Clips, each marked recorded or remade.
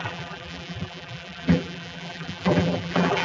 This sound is remade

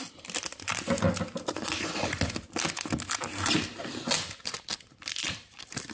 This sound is recorded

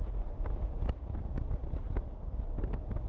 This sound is recorded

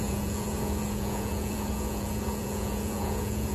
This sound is remade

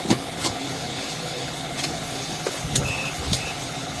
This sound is remade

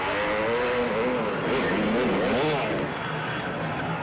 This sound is recorded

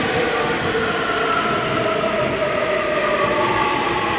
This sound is recorded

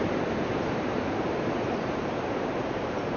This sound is remade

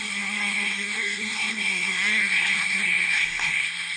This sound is remade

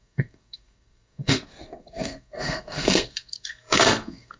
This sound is remade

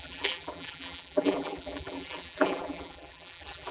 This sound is remade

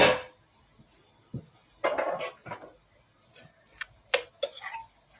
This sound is recorded